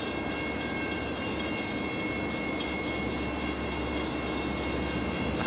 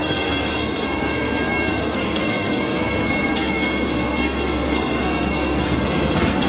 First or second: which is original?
first